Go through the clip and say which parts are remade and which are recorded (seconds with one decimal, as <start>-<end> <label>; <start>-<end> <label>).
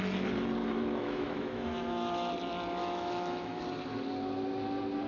0.0-0.6 recorded; 0.6-2.3 remade; 2.3-2.8 recorded; 2.8-3.6 remade; 3.6-5.1 recorded